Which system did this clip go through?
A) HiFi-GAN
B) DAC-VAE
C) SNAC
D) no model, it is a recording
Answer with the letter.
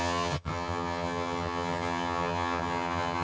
A